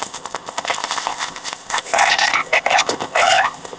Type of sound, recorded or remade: remade